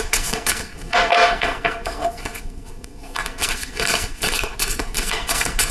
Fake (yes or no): yes